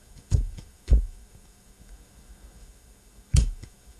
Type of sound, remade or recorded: remade